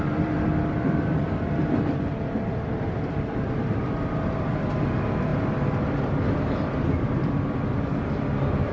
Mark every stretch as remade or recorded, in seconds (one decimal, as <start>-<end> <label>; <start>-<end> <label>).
0.0-5.3 remade; 5.3-6.0 recorded; 6.0-8.7 remade